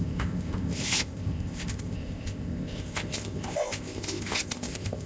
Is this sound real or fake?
fake